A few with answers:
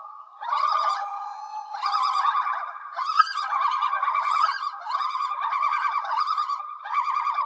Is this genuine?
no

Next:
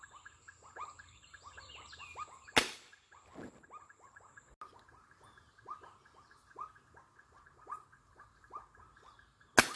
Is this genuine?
yes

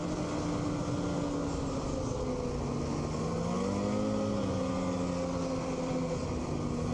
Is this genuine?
yes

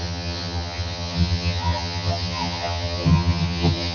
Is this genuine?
no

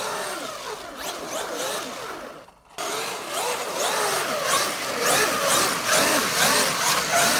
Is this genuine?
yes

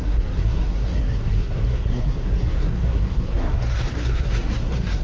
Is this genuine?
no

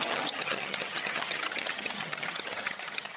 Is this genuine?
no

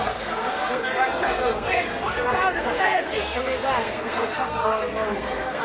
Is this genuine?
no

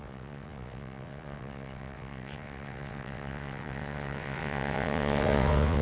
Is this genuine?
no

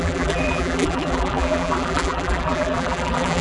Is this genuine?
no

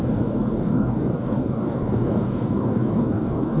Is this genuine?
no